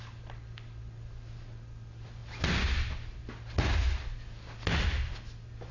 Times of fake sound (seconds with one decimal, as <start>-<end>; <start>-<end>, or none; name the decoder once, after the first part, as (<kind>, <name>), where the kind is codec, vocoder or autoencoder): none